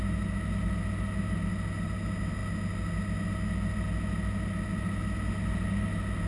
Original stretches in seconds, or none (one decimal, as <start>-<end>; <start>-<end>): 0.0-6.3